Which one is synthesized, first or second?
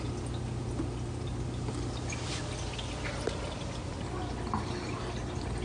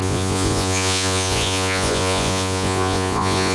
second